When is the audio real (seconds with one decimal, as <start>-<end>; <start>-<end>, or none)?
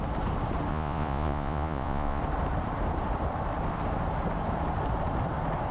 0.0-0.7; 2.2-5.7